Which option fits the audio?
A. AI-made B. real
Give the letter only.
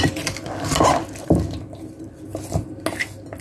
B